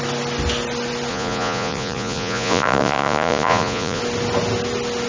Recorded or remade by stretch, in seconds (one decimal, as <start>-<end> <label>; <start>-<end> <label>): 0.0-1.1 recorded; 1.1-4.0 remade; 4.0-5.1 recorded